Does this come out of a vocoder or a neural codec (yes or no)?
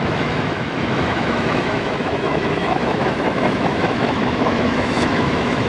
yes